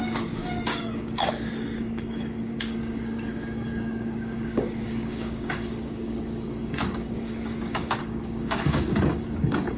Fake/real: fake